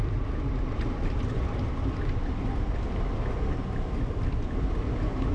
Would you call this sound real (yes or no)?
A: yes